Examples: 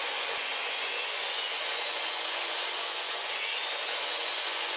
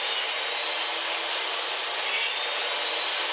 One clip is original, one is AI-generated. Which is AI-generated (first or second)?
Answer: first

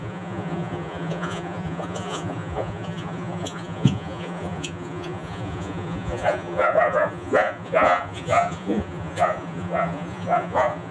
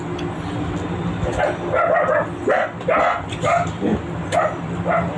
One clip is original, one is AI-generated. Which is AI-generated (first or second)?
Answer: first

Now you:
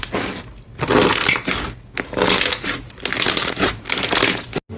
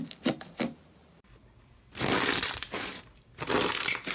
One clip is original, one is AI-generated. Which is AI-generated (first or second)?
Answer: second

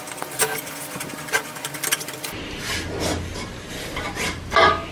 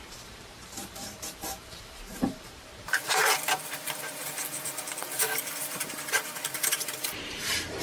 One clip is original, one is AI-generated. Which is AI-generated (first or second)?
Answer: second